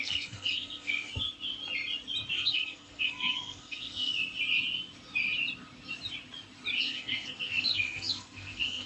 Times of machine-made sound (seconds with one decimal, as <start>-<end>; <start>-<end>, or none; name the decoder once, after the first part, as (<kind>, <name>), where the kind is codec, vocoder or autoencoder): 0.0-1.1 (codec, SNAC); 2.3-4.1; 6.8-8.9